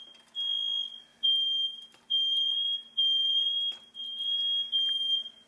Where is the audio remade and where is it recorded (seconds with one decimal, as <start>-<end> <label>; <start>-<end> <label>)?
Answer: 0.0-1.1 recorded; 1.1-4.4 remade; 4.4-5.5 recorded